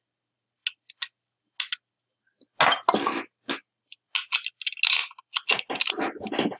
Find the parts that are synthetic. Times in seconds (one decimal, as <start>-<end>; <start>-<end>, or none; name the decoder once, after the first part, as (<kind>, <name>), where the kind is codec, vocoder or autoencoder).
none